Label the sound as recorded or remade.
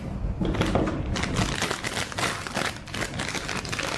recorded